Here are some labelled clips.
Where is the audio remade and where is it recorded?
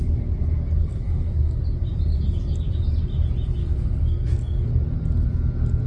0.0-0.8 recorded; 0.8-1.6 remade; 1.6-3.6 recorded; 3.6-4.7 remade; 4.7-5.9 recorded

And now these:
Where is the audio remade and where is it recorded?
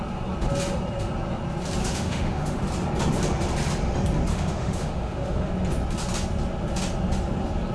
0.0-1.8 recorded; 1.8-2.6 remade; 2.6-4.3 recorded; 4.3-5.5 remade; 5.5-7.7 recorded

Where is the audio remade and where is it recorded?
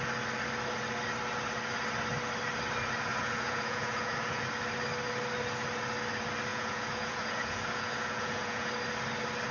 0.0-3.1 recorded; 3.1-4.4 remade; 4.4-6.5 recorded; 6.5-8.7 remade; 8.7-9.5 recorded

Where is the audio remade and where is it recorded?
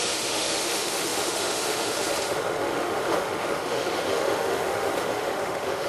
0.0-5.9 remade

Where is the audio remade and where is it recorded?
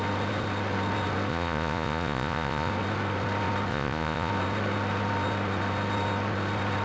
0.0-1.3 recorded; 1.3-2.7 remade; 2.7-3.7 recorded; 3.7-4.3 remade; 4.3-6.8 recorded